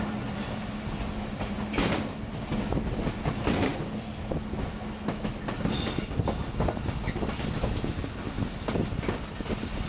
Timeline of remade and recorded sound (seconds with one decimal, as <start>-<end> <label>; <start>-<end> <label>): 0.0-9.9 recorded